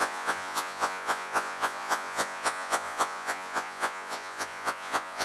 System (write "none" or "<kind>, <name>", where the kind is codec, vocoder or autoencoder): vocoder, Vocos